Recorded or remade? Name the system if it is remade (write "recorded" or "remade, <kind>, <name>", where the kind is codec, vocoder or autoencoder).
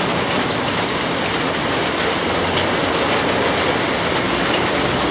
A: recorded